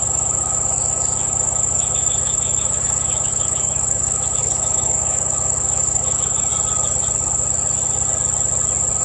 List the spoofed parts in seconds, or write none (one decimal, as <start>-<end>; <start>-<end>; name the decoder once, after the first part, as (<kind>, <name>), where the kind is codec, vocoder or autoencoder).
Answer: 0.0-6.5 (autoencoder, DAC-VAE)